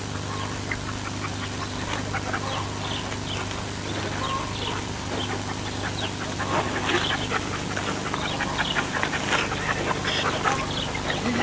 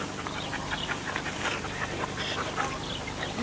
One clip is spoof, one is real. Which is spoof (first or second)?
second